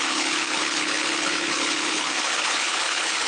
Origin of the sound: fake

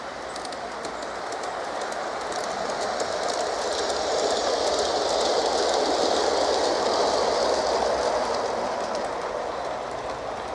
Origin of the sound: real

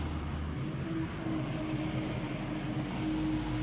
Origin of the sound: real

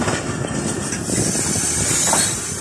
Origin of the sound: real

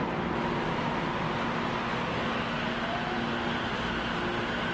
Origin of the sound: real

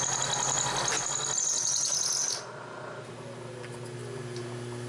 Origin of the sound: real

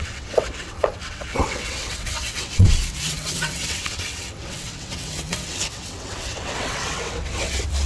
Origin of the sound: fake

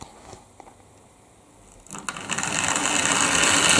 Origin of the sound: real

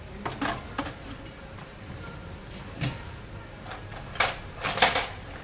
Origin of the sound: real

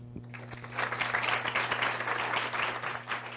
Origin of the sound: real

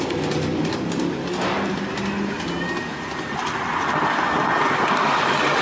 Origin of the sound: real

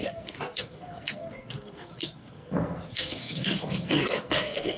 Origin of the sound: fake